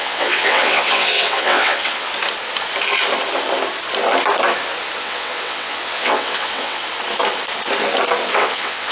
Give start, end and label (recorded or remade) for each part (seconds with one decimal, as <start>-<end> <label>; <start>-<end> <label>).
0.0-2.1 remade; 2.1-5.0 recorded; 5.0-6.8 remade; 6.8-8.2 recorded; 8.2-8.9 remade